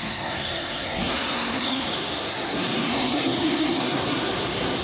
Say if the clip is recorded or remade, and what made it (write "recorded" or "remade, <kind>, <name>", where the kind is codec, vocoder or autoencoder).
remade, codec, SNAC